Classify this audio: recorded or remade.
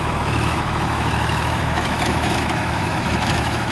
remade